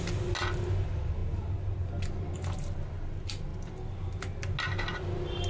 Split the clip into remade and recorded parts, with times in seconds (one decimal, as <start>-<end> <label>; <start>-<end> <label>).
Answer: 0.0-5.5 recorded